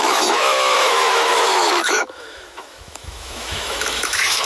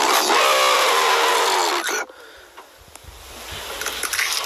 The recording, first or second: second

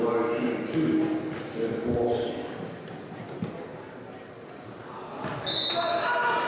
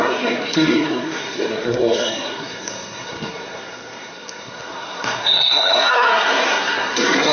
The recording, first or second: first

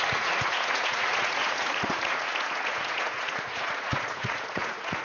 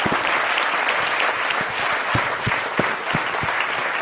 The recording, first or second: second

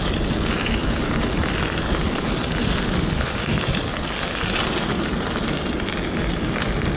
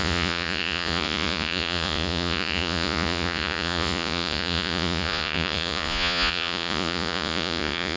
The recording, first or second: first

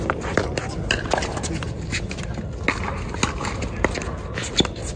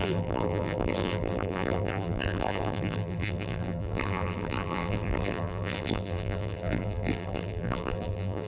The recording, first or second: first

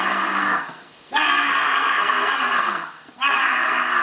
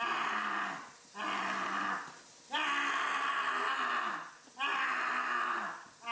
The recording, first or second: second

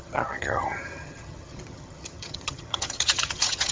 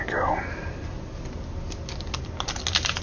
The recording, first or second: second